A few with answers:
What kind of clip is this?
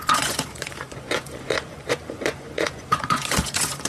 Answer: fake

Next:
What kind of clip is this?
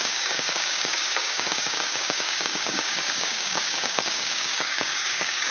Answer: fake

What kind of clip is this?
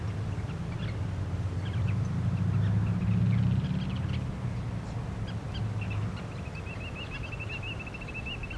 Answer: real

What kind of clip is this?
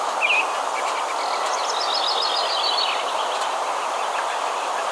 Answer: real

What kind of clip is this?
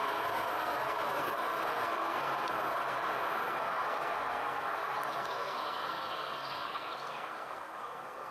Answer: fake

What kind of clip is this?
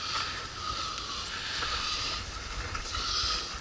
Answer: real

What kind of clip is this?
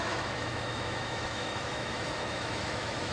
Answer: fake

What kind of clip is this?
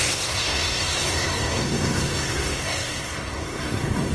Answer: fake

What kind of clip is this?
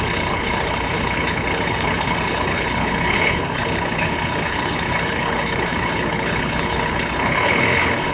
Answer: fake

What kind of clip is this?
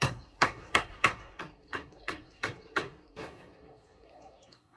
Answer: fake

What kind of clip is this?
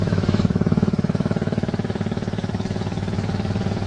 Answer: fake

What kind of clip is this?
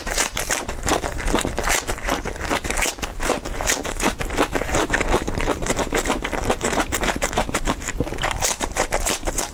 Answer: fake